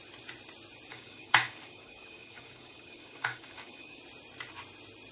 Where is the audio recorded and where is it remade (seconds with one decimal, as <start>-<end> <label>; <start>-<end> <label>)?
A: 0.0-0.9 recorded; 0.9-4.0 remade; 4.0-5.1 recorded